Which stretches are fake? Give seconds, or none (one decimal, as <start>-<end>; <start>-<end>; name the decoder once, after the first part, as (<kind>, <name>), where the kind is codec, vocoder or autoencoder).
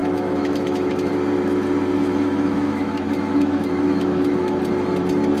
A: 0.0-1.1 (autoencoder, DAC-VAE); 2.0-4.6